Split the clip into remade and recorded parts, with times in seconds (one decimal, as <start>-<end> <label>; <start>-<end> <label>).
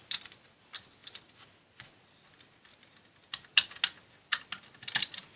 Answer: 0.0-5.4 recorded